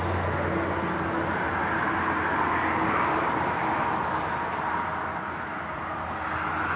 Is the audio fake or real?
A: real